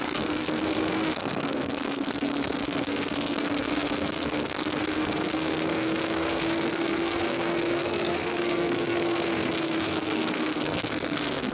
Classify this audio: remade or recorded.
remade